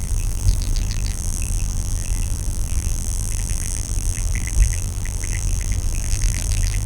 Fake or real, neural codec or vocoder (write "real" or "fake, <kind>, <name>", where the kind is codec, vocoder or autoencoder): fake, vocoder, BigVGAN v2